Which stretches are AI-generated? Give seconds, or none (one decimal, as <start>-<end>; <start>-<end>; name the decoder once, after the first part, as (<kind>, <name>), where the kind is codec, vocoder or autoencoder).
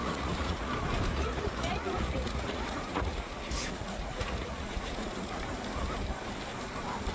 0.0-0.7 (vocoder, Vocos); 1.1-5.4